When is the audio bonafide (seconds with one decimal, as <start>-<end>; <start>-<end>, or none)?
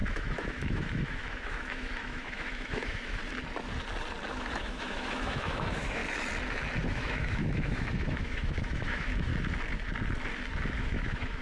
3.2-4.3; 6.0-6.9; 9.3-10.8